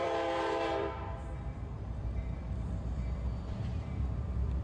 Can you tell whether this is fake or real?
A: fake